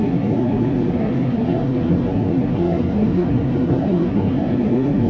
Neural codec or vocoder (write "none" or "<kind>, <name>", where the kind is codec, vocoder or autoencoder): codec, SNAC